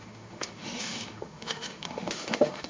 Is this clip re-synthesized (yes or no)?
yes